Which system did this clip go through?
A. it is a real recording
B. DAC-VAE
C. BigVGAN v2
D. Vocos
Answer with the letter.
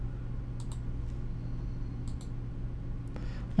A